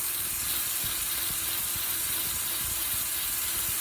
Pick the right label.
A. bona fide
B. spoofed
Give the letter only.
A